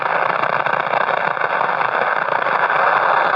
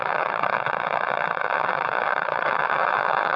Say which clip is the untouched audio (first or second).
first